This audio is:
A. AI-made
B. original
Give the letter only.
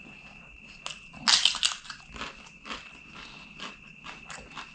B